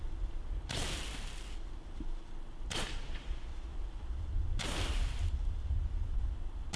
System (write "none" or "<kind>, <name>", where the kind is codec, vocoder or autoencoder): none